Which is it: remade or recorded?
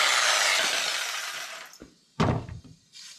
recorded